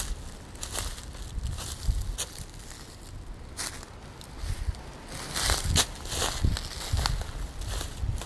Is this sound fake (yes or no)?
no